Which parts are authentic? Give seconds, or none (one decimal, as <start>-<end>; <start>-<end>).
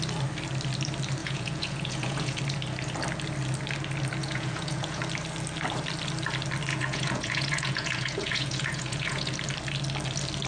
0.0-1.2; 2.4-4.2; 5.0-6.7; 9.3-10.5